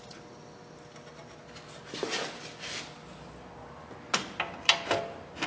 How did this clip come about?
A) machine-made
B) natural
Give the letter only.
B